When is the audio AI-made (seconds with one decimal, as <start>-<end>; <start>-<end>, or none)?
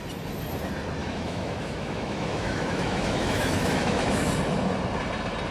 1.0-4.3